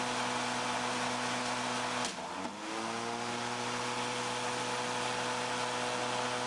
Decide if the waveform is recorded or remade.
recorded